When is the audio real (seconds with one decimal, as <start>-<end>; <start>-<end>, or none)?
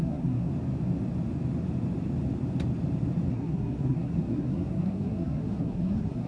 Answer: 0.5-3.3